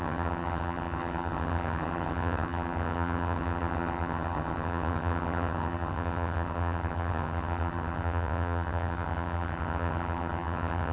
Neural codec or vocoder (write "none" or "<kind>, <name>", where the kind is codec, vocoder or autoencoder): vocoder, HiFi-GAN